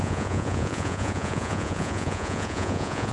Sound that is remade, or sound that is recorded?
remade